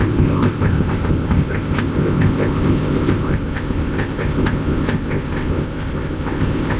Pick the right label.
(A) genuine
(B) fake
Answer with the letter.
B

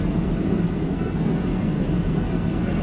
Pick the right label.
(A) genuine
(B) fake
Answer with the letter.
B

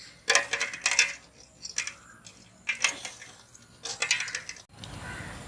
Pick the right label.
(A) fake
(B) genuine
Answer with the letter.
B